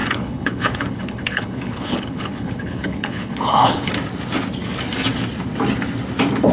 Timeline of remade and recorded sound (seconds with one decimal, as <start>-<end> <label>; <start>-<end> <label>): 0.0-3.9 remade; 3.9-6.5 recorded